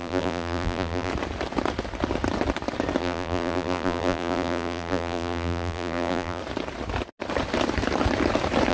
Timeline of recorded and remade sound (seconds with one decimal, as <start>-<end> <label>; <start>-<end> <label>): 0.0-1.1 remade; 1.1-3.0 recorded; 3.0-6.4 remade; 6.4-8.7 recorded